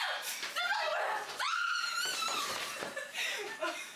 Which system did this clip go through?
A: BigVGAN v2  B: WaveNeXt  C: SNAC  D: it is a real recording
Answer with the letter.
A